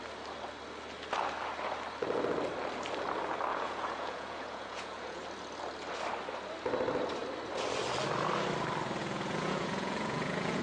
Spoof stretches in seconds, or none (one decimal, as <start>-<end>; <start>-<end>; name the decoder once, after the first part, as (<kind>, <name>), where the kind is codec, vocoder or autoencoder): 3.5-5.2 (vocoder, Vocos); 9.0-10.6